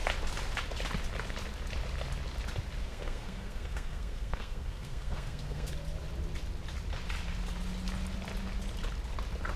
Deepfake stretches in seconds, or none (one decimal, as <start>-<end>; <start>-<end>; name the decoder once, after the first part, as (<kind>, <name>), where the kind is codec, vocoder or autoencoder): 2.8-5.7 (codec, SNAC)